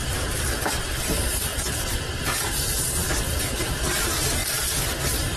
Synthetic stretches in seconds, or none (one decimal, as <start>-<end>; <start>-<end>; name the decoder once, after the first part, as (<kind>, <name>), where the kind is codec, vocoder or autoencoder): 1.5-2.2 (vocoder, BigVGAN v2); 4.4-5.4